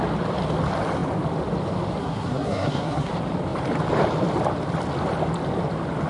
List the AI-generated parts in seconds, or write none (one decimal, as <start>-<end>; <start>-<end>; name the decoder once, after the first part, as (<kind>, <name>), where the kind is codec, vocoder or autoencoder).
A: 2.0-3.1 (codec, SNAC)